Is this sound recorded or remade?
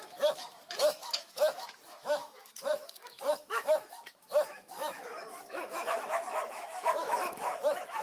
remade